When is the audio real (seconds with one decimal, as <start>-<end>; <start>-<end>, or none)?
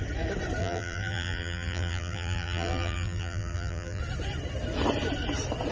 0.0-0.6; 4.0-5.7